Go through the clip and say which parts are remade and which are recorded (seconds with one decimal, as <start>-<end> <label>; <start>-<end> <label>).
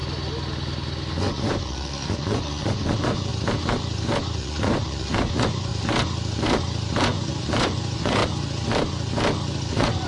0.0-1.3 recorded; 1.3-3.3 remade; 3.3-4.4 recorded; 4.4-5.7 remade; 5.7-7.0 recorded; 7.0-8.2 remade; 8.2-9.7 recorded; 9.7-10.1 remade